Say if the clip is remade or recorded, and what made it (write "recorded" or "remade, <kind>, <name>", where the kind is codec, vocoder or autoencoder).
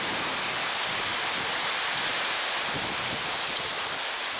recorded